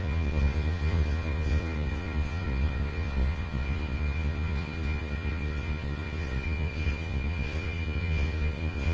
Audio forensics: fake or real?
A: fake